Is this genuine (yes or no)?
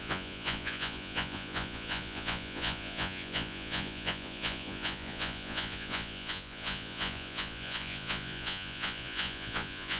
no